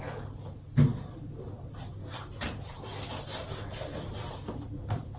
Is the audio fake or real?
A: real